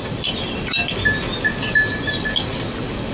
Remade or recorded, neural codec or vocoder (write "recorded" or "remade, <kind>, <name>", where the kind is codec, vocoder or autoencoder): recorded